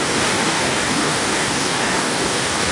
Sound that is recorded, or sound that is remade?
remade